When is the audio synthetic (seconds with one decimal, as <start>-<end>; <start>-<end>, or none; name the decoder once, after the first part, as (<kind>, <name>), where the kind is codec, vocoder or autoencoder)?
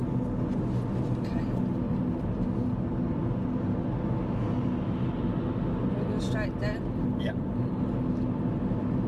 none